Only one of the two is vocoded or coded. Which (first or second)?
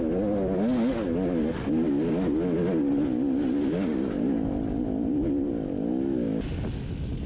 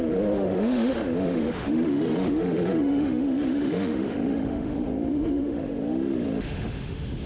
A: second